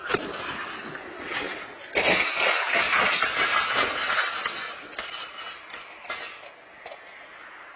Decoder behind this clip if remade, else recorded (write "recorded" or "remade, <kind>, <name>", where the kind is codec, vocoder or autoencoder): recorded